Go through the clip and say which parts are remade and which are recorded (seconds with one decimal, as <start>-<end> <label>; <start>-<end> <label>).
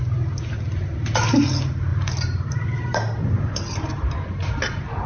0.0-1.9 recorded; 1.9-4.5 remade; 4.5-5.1 recorded